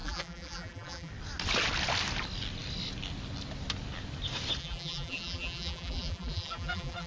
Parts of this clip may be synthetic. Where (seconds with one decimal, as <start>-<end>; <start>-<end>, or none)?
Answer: 0.0-1.1; 4.6-7.1